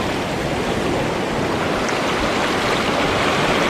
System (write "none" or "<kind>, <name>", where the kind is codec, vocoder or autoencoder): none